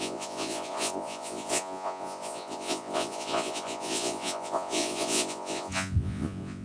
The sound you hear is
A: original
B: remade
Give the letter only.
B